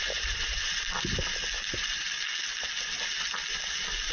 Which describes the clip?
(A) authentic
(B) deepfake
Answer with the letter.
A